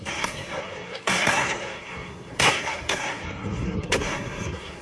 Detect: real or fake fake